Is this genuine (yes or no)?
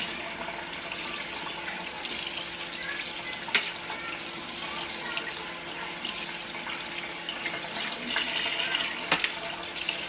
yes